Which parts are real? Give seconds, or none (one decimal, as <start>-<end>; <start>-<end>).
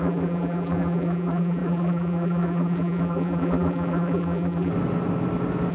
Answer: 4.7-5.7